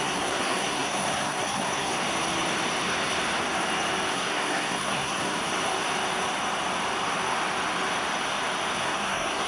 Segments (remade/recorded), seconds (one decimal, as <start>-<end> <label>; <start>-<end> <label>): 0.0-1.9 remade; 1.9-4.1 recorded; 4.1-5.4 remade; 5.4-8.8 recorded; 8.8-9.5 remade

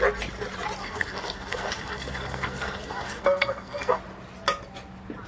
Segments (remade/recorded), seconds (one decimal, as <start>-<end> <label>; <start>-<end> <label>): 0.0-0.8 recorded; 0.8-4.0 remade; 4.0-5.3 recorded